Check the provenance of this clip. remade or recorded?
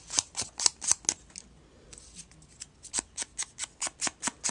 recorded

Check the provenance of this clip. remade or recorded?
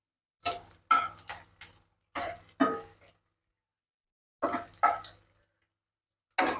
recorded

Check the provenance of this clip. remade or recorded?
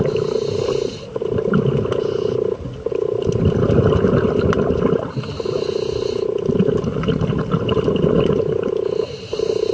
recorded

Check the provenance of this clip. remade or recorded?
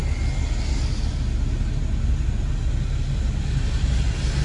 recorded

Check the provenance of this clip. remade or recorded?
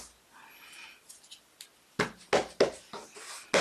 recorded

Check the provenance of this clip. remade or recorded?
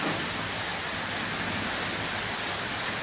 recorded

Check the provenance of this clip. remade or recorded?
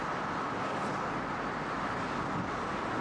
recorded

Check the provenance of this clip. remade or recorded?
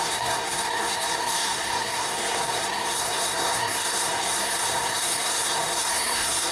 remade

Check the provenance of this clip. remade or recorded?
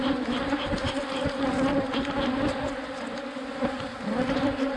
recorded